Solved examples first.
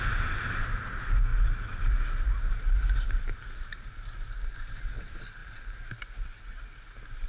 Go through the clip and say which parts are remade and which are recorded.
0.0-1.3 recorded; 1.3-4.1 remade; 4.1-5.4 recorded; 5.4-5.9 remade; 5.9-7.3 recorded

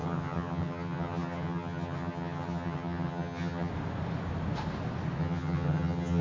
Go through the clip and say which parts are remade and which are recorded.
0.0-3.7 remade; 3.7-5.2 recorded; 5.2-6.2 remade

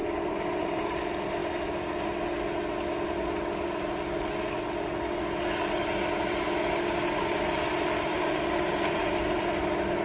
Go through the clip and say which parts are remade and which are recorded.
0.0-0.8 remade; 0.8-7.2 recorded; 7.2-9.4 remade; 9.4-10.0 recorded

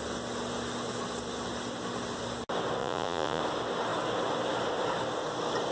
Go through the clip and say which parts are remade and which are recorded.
0.0-2.8 recorded; 2.8-3.4 remade; 3.4-5.7 recorded

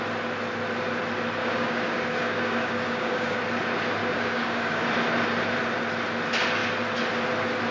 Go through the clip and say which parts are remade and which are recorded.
0.0-1.4 recorded; 1.4-3.4 remade; 3.4-4.0 recorded; 4.0-4.9 remade; 4.9-7.7 recorded